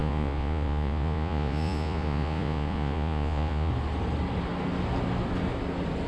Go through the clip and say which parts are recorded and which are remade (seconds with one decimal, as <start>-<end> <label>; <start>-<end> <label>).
0.0-3.7 remade; 3.7-6.1 recorded